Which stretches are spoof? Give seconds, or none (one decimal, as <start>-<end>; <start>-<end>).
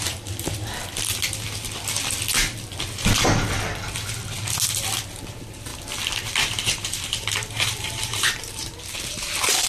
0.0-0.8; 5.0-5.7; 6.5-9.7